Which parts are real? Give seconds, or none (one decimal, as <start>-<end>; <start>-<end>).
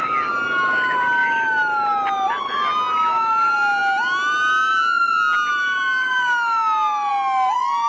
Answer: 0.0-7.9